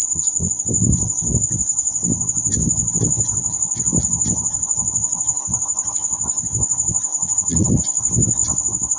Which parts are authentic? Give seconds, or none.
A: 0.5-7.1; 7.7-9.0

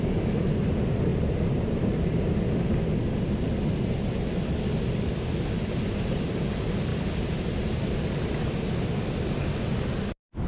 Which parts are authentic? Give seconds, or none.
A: 0.0-1.1; 2.4-10.5

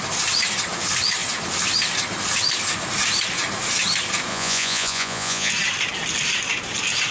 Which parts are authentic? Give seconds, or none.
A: 0.0-4.3; 5.5-7.1

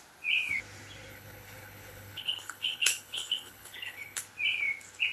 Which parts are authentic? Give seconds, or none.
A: 0.0-1.1; 4.2-5.1

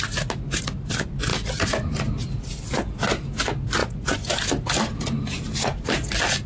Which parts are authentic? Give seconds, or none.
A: 0.0-3.8; 4.4-6.5

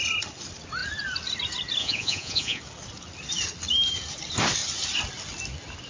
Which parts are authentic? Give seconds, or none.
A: 0.0-1.8; 2.6-5.9